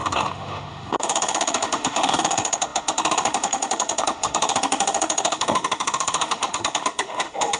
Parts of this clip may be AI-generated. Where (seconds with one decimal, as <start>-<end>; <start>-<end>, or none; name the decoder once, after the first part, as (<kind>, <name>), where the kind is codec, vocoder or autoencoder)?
0.0-7.6 (autoencoder, DAC-VAE)